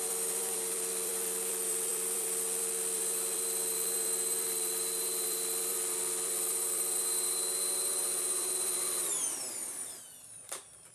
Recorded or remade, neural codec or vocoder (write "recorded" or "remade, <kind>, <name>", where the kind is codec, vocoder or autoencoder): remade, vocoder, BigVGAN v2